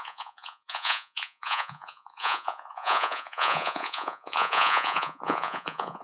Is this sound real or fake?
fake